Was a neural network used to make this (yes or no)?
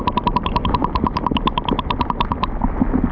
no